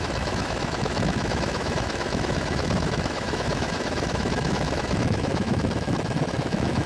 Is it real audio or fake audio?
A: fake